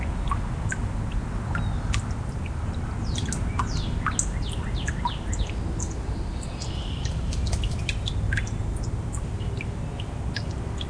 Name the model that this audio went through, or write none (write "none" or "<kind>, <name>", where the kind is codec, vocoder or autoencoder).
none